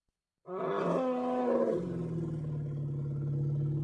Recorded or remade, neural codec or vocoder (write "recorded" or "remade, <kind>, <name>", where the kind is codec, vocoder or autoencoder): recorded